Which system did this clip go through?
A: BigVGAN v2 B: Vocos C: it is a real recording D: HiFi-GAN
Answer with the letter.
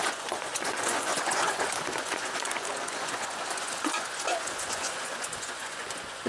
B